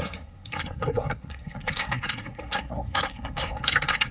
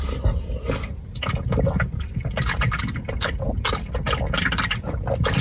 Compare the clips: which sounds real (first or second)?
second